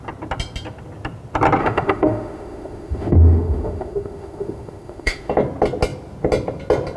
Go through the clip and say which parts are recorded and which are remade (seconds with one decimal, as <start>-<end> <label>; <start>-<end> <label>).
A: 0.0-1.6 recorded; 1.6-5.3 remade; 5.3-7.0 recorded